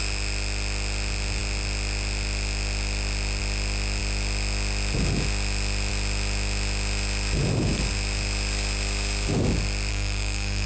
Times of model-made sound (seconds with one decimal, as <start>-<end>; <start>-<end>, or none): 9.9-10.7